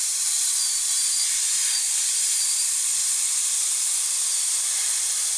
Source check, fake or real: fake